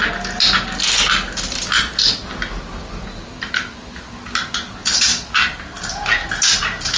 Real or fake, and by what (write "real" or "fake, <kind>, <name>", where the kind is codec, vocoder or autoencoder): real